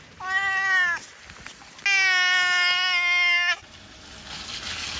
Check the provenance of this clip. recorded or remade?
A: recorded